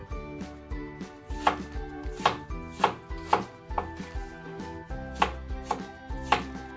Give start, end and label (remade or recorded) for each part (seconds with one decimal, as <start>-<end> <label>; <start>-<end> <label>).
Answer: 0.0-6.8 recorded